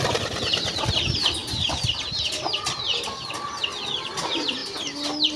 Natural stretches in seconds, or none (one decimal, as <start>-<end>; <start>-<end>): 0.0-5.4